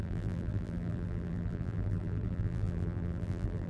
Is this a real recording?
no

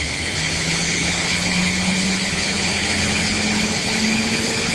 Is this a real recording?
no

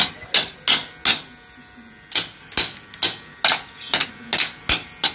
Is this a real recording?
yes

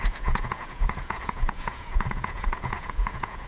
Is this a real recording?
no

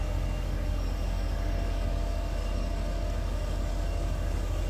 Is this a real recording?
no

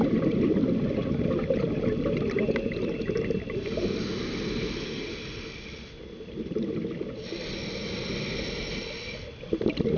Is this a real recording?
yes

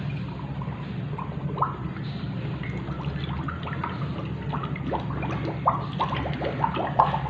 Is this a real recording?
yes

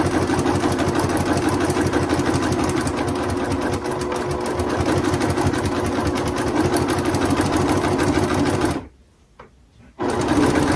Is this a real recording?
yes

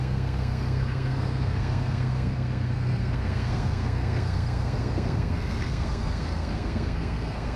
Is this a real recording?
no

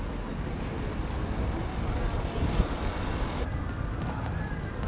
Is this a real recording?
yes